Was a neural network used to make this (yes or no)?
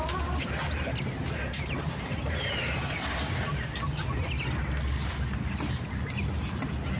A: no